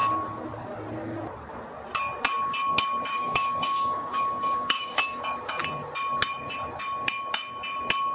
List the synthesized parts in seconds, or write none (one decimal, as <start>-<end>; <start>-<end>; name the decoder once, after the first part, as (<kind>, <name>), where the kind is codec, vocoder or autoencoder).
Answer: 3.1-5.2 (codec, DAC)